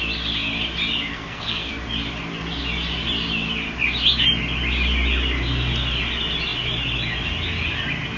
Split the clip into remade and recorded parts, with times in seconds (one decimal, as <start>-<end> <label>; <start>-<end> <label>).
0.0-1.1 recorded; 1.1-1.7 remade; 1.7-8.2 recorded